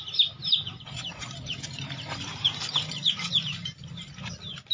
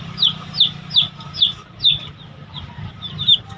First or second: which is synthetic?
first